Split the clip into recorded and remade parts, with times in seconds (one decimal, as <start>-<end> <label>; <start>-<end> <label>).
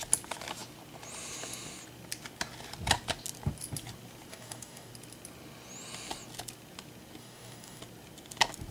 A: 0.0-4.3 recorded; 4.3-4.9 remade; 4.9-7.2 recorded; 7.2-7.8 remade; 7.8-8.7 recorded